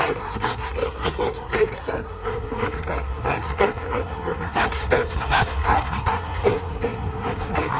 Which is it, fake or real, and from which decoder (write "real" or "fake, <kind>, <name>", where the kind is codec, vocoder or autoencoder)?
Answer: fake, codec, SNAC